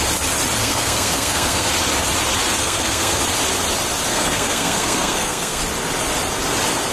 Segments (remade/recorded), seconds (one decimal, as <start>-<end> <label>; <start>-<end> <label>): 0.0-0.6 recorded; 0.6-1.7 remade; 1.7-2.6 recorded; 2.6-3.2 remade; 3.2-4.1 recorded; 4.1-5.6 remade; 5.6-6.9 recorded